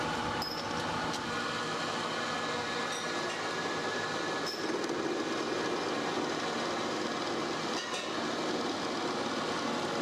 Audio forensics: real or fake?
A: real